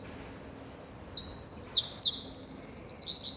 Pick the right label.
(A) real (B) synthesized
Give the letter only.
A